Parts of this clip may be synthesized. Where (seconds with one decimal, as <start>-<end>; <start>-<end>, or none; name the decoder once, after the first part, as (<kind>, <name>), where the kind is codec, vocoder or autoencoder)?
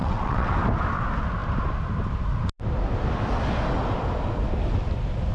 0.0-0.5 (vocoder, WaveNeXt)